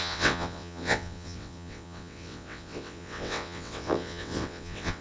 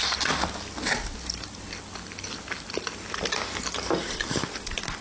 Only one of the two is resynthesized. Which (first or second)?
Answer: first